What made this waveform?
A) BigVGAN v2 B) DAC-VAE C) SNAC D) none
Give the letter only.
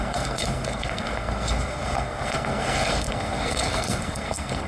C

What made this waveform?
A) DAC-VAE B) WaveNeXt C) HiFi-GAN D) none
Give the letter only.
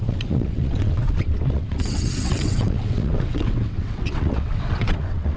B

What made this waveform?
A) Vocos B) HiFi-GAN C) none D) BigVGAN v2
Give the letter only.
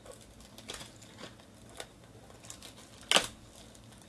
C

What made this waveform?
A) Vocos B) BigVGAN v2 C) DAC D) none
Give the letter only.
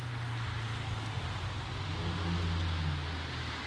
D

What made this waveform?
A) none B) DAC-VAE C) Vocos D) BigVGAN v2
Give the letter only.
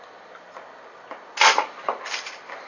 A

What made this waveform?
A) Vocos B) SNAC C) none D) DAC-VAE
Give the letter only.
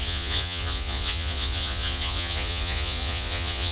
A